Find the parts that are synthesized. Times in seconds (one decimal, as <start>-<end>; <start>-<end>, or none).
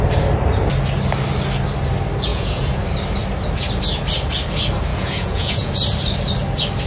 2.3-2.8; 4.9-5.7